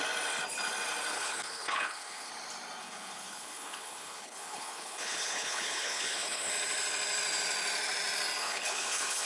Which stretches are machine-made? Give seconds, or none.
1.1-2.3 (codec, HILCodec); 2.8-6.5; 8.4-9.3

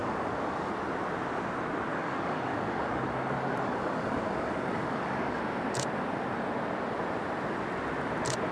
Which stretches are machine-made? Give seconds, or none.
0.0-0.7 (codec, DAC); 1.9-5.4

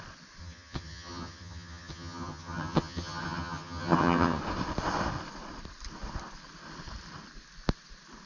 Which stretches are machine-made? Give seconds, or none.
0.4-4.4 (vocoder, HiFi-GAN)

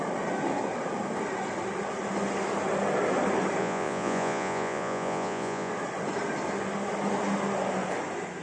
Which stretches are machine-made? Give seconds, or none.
3.6-5.7 (vocoder, Vocos)

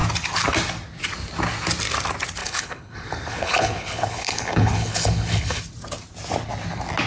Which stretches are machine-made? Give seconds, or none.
2.4-5.6 (codec, HILCodec)

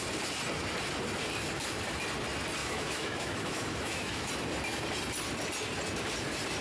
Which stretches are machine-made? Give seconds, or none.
2.6-4.3 (autoencoder, DAC-VAE)

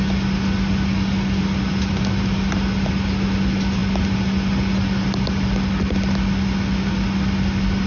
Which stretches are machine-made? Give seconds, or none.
none